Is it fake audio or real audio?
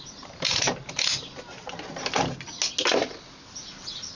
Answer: real